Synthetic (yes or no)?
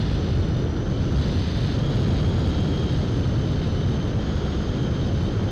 no